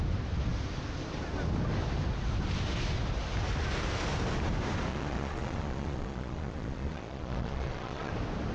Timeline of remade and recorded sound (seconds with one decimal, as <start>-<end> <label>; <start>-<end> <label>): 0.0-4.9 recorded; 4.9-8.1 remade; 8.1-8.5 recorded